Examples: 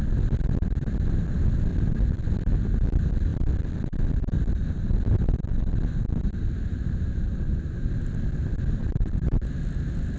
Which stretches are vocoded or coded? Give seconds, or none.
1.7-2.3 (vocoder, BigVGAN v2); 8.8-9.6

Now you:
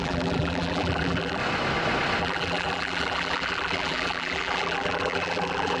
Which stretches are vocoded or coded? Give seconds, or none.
0.0-1.4 (vocoder, BigVGAN v2); 2.2-5.8

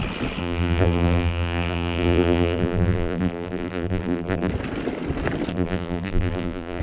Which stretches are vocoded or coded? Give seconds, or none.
0.4-4.5 (vocoder, BigVGAN v2); 5.5-6.8